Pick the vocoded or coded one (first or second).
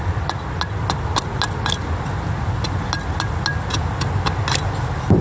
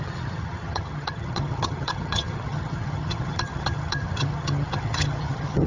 second